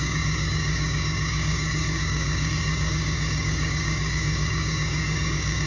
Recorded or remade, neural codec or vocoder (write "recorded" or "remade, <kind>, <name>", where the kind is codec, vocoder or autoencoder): remade, codec, DAC